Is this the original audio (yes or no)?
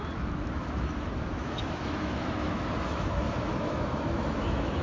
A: no